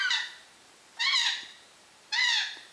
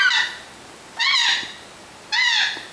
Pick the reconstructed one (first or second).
first